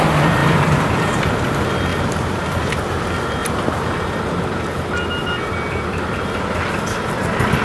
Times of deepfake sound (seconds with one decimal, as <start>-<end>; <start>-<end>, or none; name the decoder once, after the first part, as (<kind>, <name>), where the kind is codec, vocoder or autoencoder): 0.4-1.3 (vocoder, BigVGAN v2); 1.9-2.7